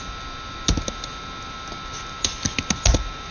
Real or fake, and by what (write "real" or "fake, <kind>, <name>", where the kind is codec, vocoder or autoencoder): real